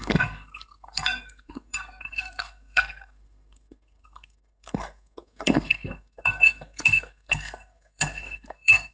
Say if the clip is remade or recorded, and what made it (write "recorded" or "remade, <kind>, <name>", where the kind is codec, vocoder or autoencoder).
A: remade, codec, SNAC